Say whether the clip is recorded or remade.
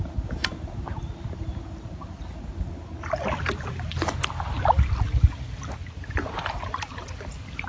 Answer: recorded